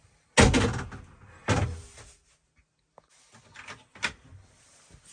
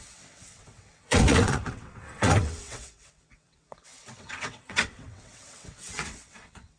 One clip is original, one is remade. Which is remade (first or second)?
second